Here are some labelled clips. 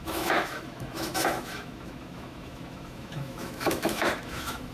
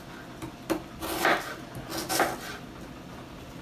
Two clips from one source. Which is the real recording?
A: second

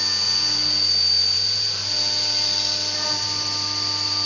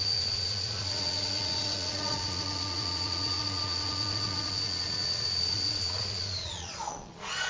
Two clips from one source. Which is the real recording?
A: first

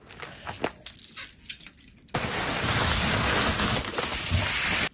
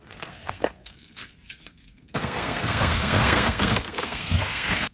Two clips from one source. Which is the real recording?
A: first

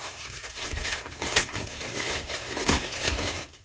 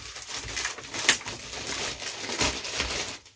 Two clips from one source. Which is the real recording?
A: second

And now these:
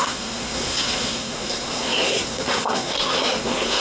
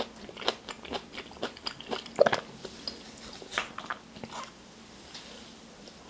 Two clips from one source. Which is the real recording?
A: second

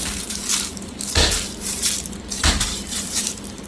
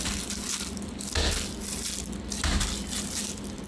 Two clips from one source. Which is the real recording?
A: second